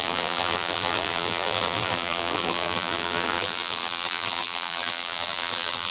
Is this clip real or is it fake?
fake